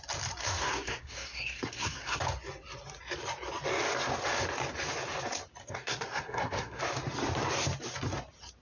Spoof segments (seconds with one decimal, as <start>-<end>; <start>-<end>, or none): 0.4-2.2; 5.6-6.8